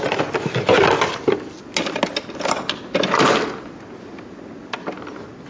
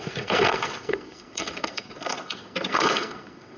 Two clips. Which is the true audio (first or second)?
first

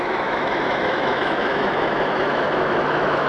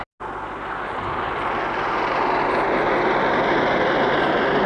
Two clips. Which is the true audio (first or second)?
second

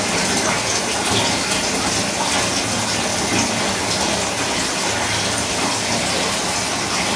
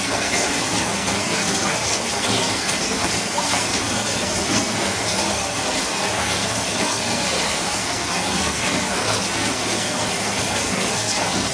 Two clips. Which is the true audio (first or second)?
first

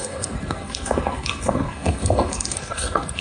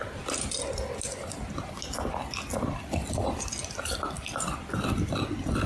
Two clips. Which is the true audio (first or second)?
second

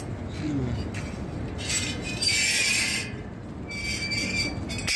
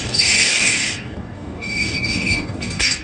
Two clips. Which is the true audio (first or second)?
first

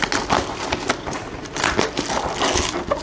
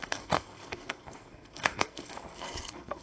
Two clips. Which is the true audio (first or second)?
first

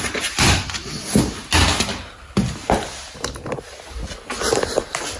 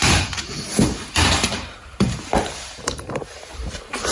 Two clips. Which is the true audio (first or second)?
first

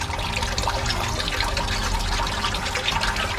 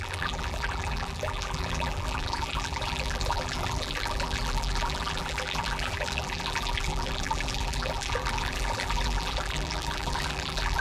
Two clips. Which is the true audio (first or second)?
first